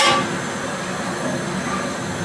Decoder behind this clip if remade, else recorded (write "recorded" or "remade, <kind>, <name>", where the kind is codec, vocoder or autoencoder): recorded